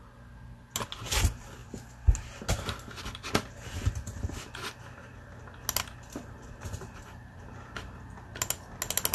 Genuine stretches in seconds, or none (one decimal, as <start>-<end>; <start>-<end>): 0.0-9.1